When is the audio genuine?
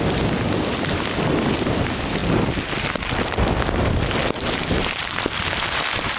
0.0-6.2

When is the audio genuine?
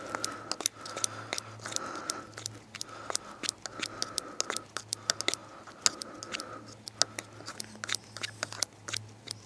0.0-9.5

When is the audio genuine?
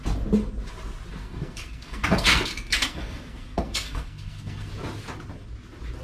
0.0-1.1; 4.7-6.0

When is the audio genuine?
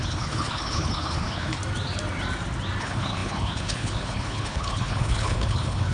1.6-2.8